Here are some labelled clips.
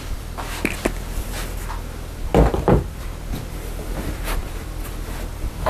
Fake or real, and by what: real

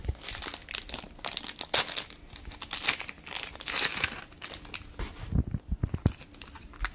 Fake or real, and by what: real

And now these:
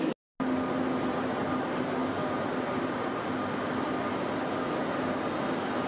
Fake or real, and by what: real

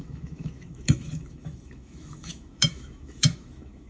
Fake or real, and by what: fake, autoencoder, DAC-VAE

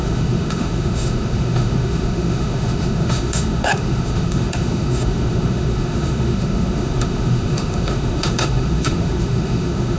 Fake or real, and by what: fake, autoencoder, DAC-VAE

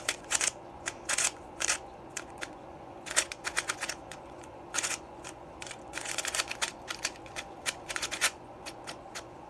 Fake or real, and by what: fake, vocoder, Vocos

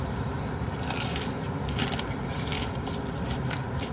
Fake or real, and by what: fake, vocoder, BigVGAN v2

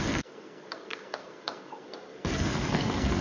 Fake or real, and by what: fake, codec, SNAC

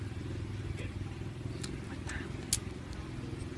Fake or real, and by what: real